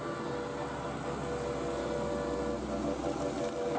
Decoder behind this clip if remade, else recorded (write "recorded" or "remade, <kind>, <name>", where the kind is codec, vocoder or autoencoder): recorded